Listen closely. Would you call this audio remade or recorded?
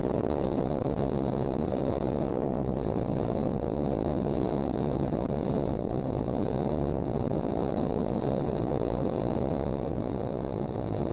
remade